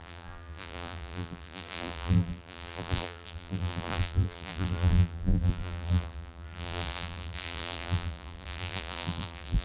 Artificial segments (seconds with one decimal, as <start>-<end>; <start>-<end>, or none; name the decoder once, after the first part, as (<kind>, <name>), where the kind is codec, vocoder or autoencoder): 0.0-9.6 (vocoder, BigVGAN v2)